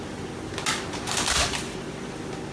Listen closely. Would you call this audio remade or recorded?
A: recorded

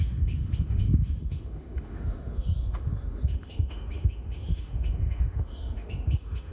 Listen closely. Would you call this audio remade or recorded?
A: remade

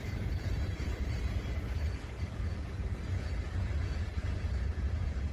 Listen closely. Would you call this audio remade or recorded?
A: remade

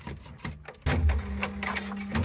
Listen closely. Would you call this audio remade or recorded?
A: recorded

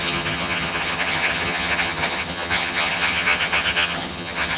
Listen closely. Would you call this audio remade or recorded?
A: remade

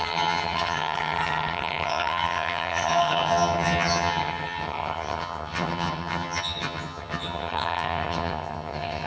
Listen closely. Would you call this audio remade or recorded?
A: remade